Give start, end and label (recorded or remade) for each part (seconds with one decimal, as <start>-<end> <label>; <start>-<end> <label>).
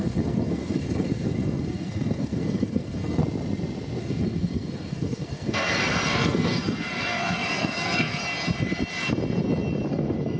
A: 0.0-3.2 remade; 3.2-4.0 recorded; 4.0-8.2 remade; 8.2-9.9 recorded; 9.9-10.4 remade